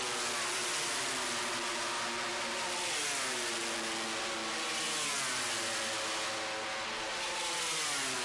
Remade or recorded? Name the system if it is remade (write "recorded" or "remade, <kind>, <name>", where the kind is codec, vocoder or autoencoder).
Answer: recorded